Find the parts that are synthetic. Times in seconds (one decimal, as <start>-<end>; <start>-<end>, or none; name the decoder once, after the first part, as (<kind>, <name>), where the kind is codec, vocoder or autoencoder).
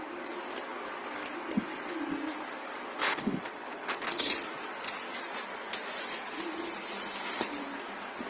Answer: 3.0-4.3 (codec, HILCodec)